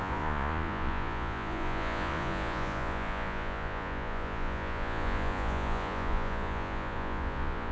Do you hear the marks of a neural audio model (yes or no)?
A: yes